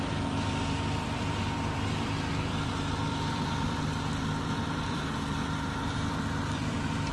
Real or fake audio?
fake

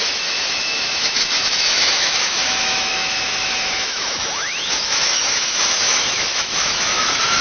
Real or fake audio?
fake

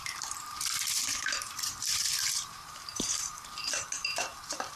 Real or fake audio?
fake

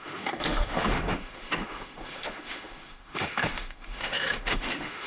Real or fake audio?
fake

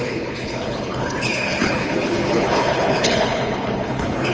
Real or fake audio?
fake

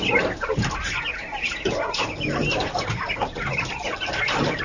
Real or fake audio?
real